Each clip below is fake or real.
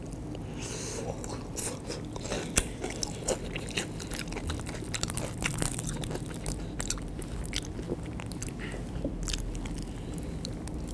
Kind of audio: real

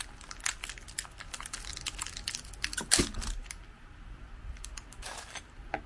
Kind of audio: real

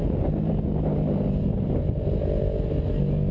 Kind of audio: real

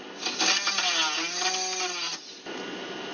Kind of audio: real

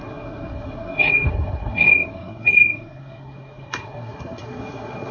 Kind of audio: fake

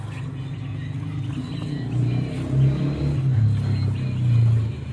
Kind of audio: real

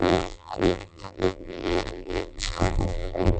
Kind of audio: fake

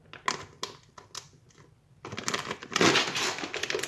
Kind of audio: real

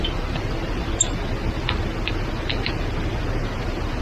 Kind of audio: real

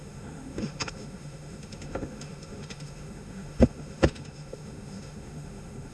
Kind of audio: fake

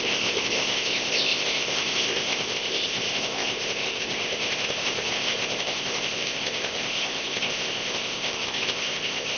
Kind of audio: fake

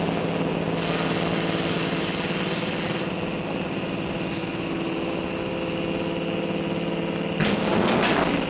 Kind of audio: real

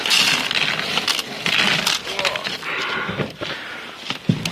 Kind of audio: real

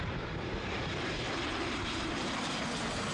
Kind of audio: fake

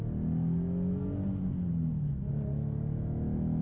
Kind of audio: real